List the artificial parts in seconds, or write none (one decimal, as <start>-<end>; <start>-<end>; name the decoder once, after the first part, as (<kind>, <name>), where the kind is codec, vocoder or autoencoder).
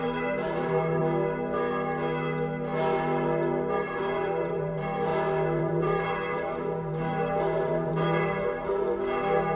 0.0-1.0 (vocoder, BigVGAN v2); 3.8-5.1; 5.6-9.5